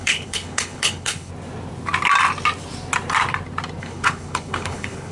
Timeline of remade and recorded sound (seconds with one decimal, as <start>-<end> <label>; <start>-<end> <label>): 0.0-1.3 remade; 1.3-3.8 recorded; 3.8-5.1 remade